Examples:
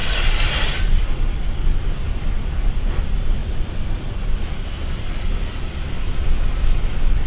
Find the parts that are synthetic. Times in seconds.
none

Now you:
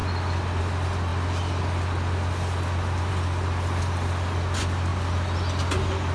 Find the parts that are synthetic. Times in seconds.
none

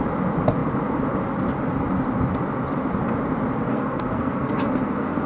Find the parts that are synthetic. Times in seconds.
3.7-5.3 (codec, SNAC)

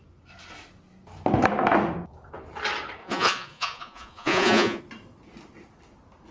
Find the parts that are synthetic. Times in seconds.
3.0-4.8 (vocoder, Vocos)

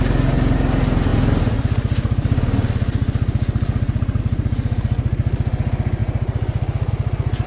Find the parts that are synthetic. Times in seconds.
none